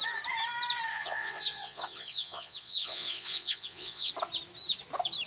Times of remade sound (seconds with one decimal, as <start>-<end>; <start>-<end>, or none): 0.9-4.1